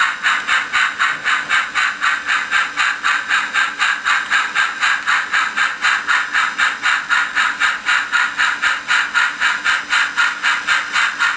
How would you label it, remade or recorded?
recorded